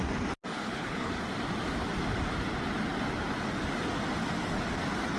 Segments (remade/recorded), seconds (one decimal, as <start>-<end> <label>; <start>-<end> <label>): 0.0-0.5 recorded; 0.5-1.1 remade; 1.1-5.2 recorded